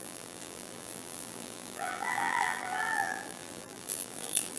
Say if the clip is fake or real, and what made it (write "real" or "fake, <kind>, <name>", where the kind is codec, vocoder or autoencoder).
fake, vocoder, BigVGAN v2